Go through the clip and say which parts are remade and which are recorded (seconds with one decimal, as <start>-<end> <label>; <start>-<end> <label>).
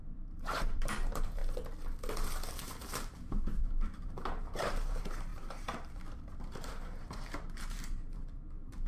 0.0-1.4 remade; 1.4-2.5 recorded; 2.5-8.9 remade